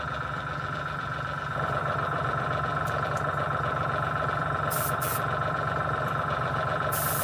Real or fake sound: fake